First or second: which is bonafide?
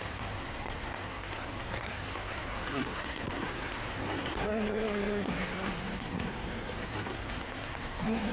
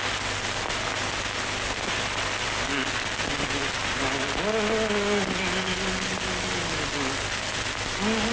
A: second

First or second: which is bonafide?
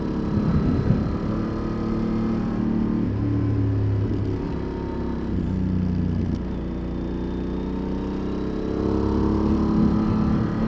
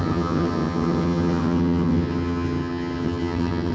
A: first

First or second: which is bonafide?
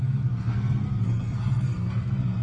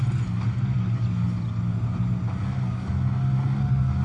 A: second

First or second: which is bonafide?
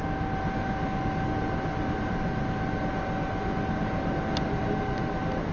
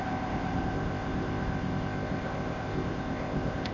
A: first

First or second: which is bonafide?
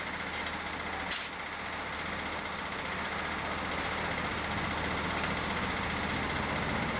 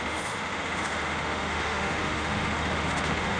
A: first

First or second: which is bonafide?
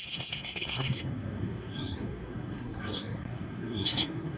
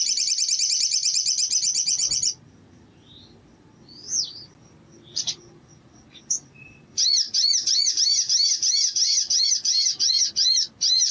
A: second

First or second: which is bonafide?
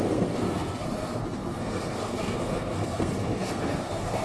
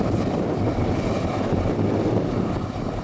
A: second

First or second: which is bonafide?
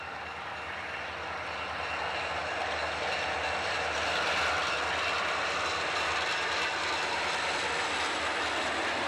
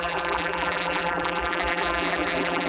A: first